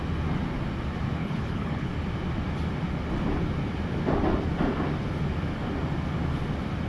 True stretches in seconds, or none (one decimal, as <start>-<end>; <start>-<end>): 0.0-1.2; 1.9-6.9

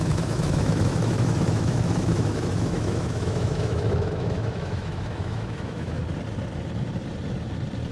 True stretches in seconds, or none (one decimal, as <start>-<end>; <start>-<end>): 6.0-7.9

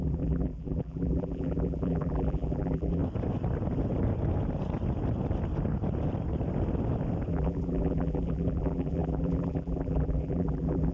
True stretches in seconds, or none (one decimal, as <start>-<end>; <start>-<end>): 3.0-7.3